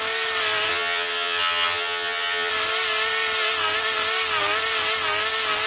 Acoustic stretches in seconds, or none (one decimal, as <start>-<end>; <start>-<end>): 0.0-0.7; 2.5-5.7